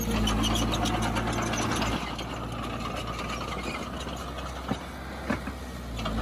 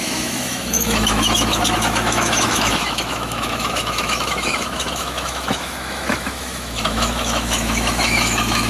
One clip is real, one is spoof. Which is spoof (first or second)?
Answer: second